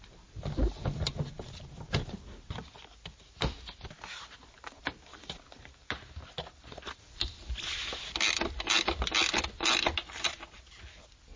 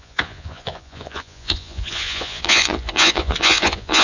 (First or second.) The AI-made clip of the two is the second